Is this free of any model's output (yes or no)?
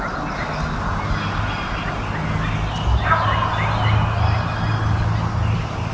yes